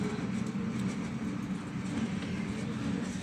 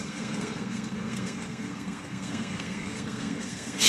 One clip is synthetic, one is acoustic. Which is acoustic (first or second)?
first